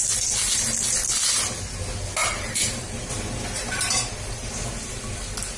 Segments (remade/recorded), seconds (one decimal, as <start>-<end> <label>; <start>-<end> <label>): 0.0-2.2 recorded; 2.2-3.1 remade; 3.1-3.6 recorded; 3.6-4.5 remade; 4.5-5.6 recorded